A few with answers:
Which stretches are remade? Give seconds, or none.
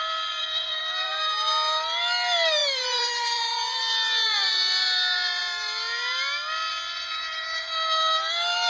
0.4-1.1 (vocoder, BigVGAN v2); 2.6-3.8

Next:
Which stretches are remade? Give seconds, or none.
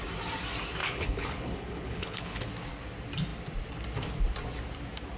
0.8-2.5 (codec, HILCodec)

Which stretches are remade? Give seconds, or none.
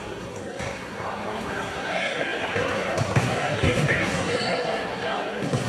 0.0-5.7 (codec, SNAC)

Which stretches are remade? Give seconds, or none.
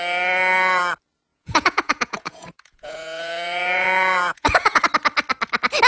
1.3-4.8 (vocoder, Vocos)